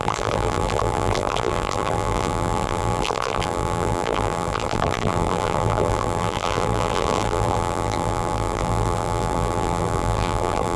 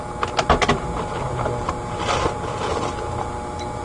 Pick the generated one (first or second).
first